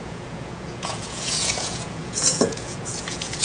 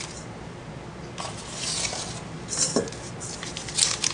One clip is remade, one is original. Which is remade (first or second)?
first